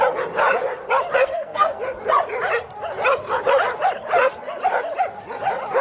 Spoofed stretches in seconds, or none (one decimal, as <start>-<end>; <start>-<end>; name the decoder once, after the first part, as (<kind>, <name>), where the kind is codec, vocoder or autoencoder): 1.2-1.8 (codec, SNAC)